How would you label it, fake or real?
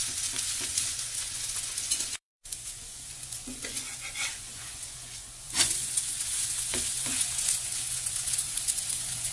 fake